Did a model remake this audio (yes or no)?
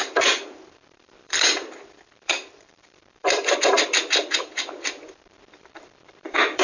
yes